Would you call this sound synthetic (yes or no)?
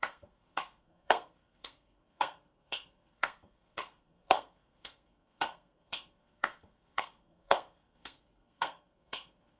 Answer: yes